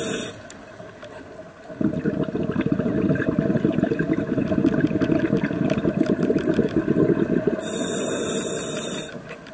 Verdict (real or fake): real